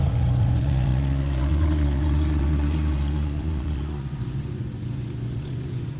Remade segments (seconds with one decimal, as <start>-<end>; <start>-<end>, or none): 0.0-6.0